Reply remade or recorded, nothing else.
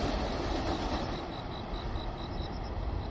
recorded